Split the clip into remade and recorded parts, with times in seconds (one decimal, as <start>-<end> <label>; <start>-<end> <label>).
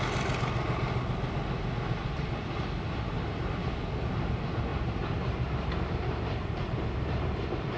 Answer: 0.0-2.0 recorded; 2.0-3.7 remade; 3.7-4.7 recorded; 4.7-7.8 remade